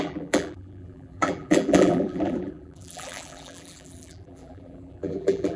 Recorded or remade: remade